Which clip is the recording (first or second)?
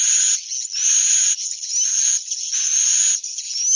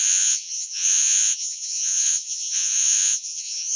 first